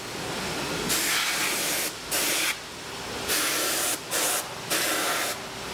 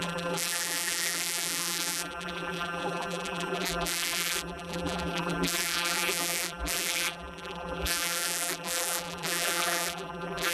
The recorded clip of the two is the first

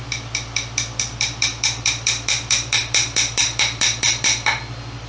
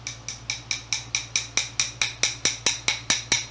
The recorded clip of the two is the second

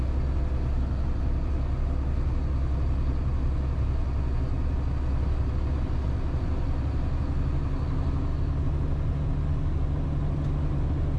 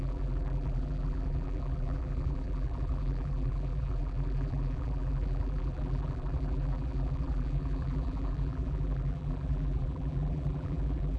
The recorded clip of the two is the first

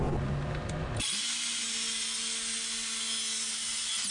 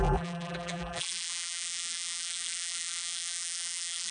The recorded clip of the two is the first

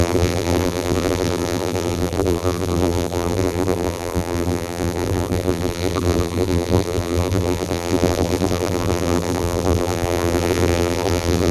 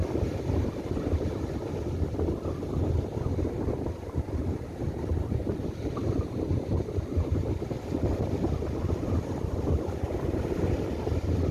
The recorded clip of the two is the second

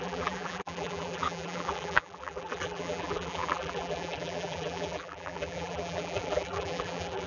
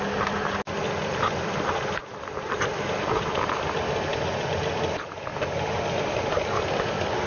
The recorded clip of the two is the second